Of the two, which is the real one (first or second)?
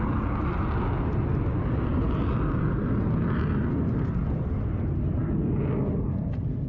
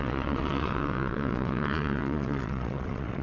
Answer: first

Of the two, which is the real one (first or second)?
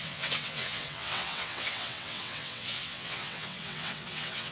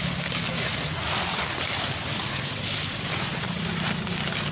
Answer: second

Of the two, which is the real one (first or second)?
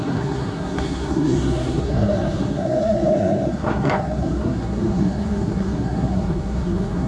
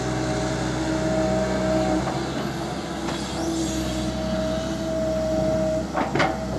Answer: second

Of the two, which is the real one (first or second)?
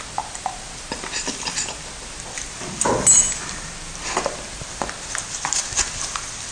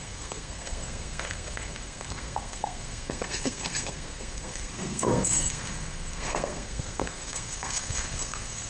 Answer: first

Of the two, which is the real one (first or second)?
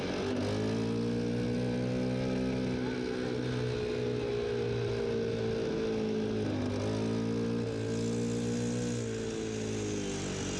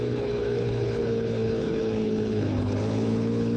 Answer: first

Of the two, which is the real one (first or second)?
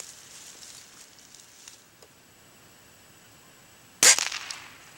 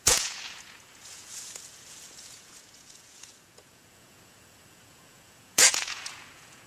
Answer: first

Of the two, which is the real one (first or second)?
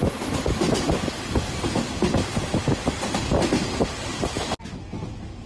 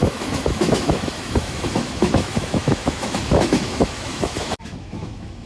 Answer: first